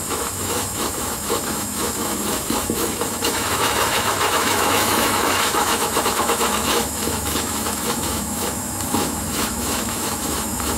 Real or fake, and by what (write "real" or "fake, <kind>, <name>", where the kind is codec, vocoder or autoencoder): fake, autoencoder, DAC-VAE